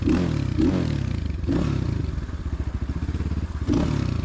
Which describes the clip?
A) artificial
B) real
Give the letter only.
B